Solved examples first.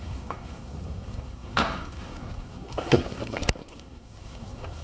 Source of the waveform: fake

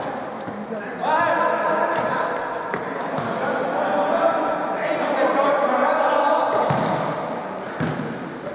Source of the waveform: real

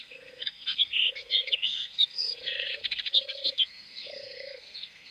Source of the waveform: fake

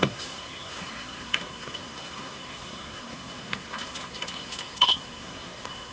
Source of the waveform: fake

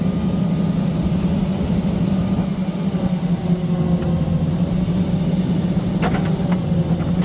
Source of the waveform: real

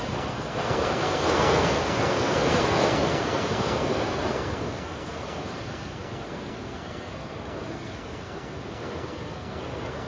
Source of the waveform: fake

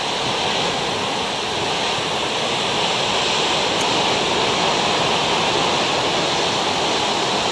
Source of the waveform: real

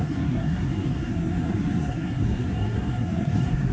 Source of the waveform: fake